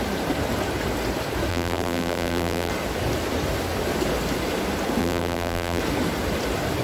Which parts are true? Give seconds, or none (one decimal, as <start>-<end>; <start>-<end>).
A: 0.0-1.5; 2.7-5.0; 5.8-6.8